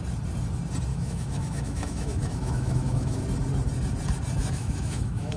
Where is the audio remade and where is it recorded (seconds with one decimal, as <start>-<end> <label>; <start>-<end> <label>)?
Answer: 0.0-0.9 recorded; 0.9-3.2 remade; 3.2-4.4 recorded; 4.4-5.4 remade